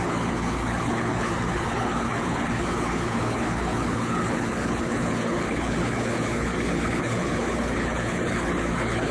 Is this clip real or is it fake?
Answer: fake